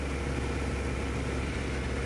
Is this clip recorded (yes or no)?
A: yes